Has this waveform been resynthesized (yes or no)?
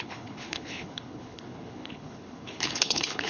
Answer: yes